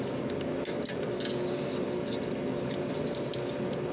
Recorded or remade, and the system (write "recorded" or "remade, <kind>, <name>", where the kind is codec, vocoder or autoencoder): recorded